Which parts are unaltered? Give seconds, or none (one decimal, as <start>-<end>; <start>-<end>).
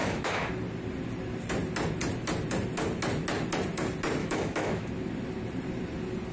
0.5-4.2; 4.9-6.3